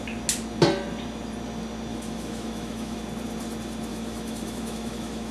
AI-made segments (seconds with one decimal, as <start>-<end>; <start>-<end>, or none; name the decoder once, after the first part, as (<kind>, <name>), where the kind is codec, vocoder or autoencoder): 1.9-3.0 (autoencoder, DAC-VAE); 3.9-5.3

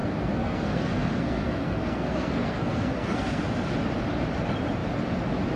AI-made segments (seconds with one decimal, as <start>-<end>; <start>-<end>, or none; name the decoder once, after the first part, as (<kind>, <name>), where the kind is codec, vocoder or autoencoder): 0.0-3.4 (codec, SNAC)